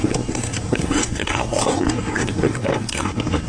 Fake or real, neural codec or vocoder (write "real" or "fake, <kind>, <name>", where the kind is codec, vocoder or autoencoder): fake, codec, SNAC